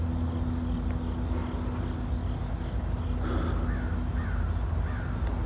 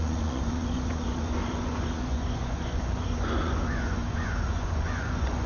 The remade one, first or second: second